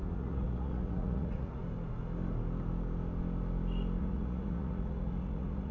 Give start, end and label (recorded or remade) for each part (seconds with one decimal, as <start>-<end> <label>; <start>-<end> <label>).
0.0-1.6 remade; 1.6-4.0 recorded; 4.0-5.7 remade